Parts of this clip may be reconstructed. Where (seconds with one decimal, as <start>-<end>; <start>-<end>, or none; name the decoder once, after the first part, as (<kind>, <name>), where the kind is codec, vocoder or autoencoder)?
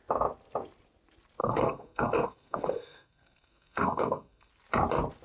1.4-4.5 (codec, SNAC)